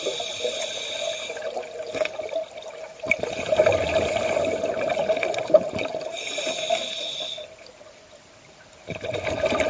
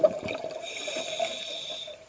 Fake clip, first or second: second